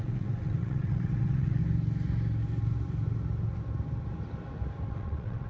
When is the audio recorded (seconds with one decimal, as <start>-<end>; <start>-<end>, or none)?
1.6-4.9